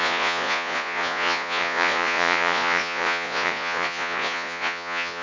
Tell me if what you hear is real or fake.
fake